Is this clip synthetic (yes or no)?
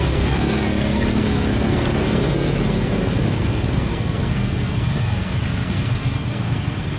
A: yes